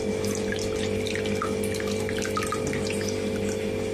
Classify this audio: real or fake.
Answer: real